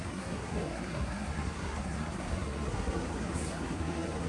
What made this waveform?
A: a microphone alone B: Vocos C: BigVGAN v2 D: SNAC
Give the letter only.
D